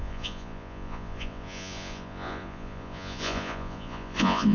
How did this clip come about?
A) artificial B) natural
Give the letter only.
A